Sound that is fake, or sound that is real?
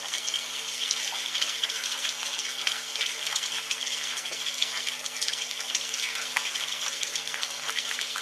fake